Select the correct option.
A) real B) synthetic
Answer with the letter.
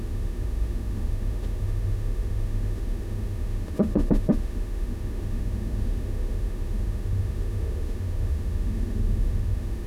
B